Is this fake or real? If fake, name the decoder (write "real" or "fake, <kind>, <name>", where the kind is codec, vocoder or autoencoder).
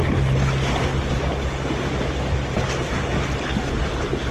real